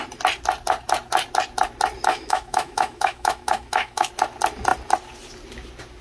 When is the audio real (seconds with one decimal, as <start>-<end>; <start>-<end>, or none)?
0.0-2.1; 4.1-6.0

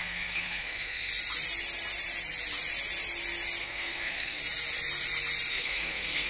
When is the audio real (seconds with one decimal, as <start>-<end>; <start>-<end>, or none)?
1.1-3.6; 4.4-5.5

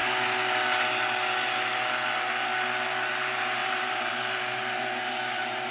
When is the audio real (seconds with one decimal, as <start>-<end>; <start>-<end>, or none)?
0.0-3.1

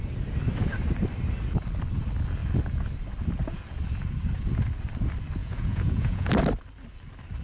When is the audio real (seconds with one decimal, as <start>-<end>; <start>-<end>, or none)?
0.0-5.4; 6.3-7.4